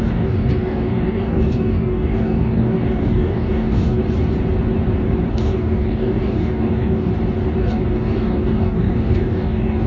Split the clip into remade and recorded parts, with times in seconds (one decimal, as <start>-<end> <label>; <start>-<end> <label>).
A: 0.0-4.0 remade; 4.0-5.3 recorded; 5.3-7.1 remade; 7.1-7.6 recorded; 7.6-9.9 remade